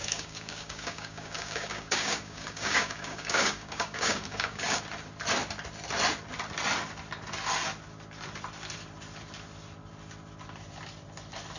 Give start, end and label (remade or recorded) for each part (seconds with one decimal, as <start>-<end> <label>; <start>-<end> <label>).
0.0-4.8 remade; 4.8-11.6 recorded